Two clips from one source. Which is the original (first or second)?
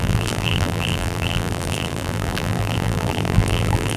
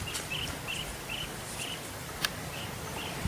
second